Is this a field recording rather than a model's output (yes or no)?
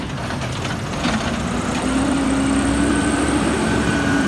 no